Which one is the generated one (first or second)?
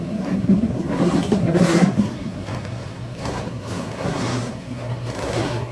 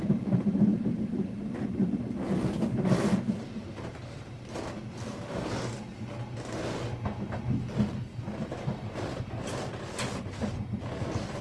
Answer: first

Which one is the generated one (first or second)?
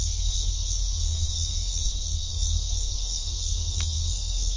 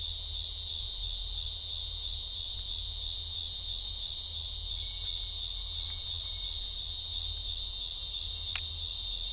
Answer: first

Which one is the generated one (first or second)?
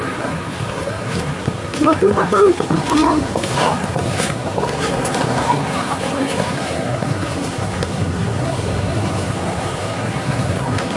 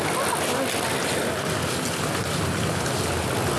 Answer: first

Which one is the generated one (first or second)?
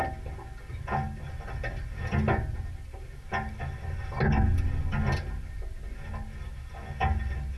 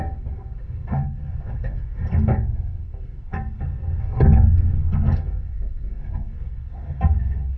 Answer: second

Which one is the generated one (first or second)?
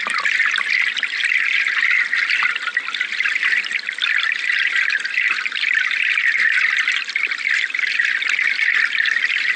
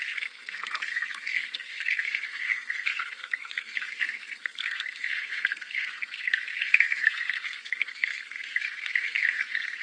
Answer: second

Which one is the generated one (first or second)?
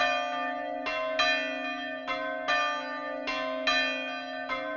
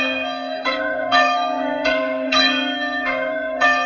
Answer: second